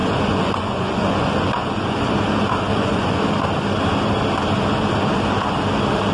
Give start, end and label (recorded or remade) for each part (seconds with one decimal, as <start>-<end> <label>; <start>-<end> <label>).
0.0-2.1 remade; 2.1-2.7 recorded; 2.7-3.2 remade; 3.2-6.1 recorded